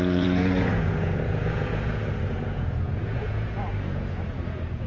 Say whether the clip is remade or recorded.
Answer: remade